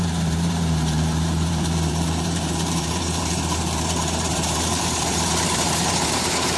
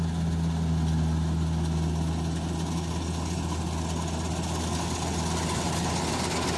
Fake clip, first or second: first